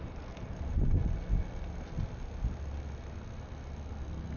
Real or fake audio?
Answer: real